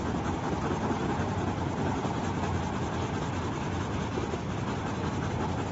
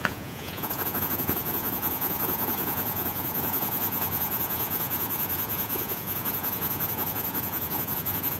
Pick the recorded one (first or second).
first